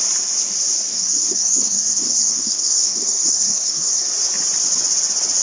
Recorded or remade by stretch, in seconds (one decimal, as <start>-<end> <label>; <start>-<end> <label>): 0.0-0.9 recorded; 0.9-4.1 remade; 4.1-5.4 recorded